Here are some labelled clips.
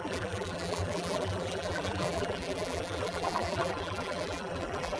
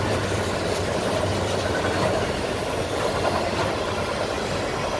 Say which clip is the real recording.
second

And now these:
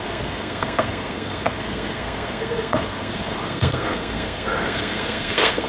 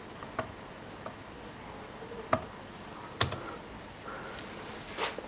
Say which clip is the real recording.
second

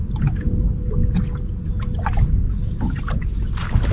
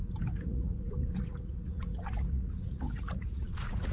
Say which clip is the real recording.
first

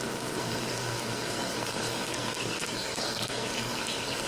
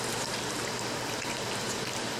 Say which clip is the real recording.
second